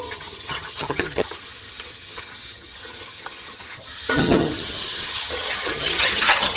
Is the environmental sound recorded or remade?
remade